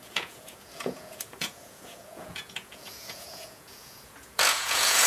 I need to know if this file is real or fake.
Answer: fake